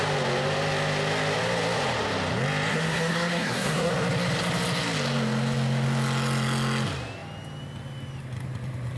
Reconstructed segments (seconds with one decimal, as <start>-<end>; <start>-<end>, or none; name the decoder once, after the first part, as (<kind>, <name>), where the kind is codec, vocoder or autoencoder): 2.7-3.9 (codec, SNAC)